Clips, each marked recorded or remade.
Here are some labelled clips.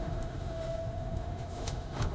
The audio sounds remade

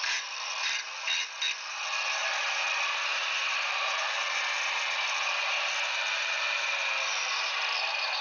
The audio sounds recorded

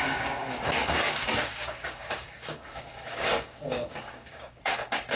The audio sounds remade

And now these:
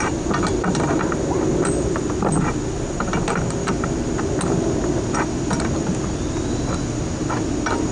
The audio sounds recorded